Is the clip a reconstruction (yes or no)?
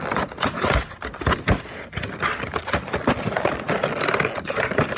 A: no